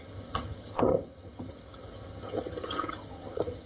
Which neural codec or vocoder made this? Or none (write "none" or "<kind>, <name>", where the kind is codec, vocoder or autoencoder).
vocoder, HiFi-GAN